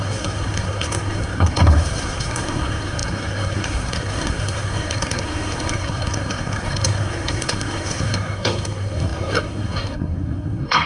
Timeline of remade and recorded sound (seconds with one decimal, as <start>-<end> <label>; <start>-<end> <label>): 0.0-10.9 remade